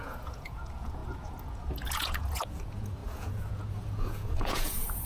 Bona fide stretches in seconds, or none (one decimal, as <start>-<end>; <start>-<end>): none